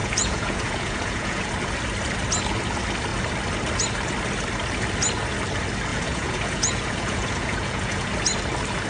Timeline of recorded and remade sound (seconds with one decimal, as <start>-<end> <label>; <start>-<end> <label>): 0.0-1.5 remade; 1.5-5.9 recorded; 5.9-8.1 remade; 8.1-8.9 recorded